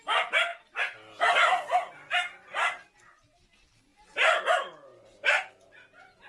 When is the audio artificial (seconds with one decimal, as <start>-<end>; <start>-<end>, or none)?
none